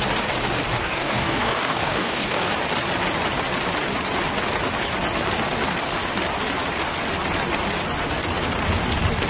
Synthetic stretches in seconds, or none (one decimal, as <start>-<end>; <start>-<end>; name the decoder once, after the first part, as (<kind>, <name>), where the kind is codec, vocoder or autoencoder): 0.8-2.5 (codec, DAC)

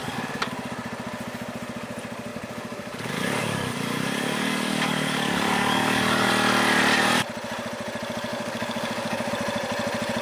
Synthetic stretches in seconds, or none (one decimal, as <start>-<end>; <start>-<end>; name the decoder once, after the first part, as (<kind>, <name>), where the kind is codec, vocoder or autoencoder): 0.0-0.5 (codec, DAC); 2.3-6.3; 8.3-9.3

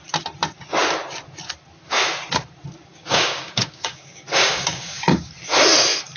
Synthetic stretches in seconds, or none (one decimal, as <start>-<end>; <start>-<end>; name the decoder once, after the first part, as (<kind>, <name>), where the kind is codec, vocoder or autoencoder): 2.9-5.3 (codec, DAC)

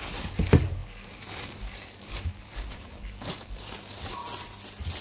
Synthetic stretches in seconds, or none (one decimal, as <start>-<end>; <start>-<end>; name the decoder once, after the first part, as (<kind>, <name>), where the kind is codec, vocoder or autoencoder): 0.0-4.2 (codec, DAC)

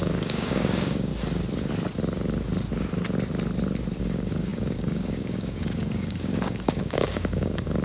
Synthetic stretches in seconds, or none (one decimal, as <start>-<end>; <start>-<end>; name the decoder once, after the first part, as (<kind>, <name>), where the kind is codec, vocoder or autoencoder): 0.0-1.1 (codec, DAC); 4.0-7.8

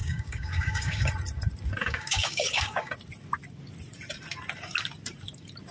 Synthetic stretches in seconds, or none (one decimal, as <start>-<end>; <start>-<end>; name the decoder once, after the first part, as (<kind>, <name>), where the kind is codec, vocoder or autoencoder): 0.0-1.1 (codec, DAC); 1.8-2.9